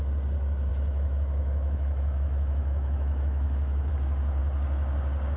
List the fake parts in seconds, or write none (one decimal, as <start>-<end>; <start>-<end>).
0.7-3.9